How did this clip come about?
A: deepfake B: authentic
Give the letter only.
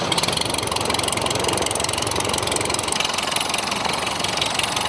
B